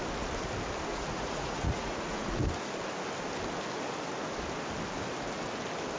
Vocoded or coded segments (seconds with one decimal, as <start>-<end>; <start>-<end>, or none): 0.9-2.4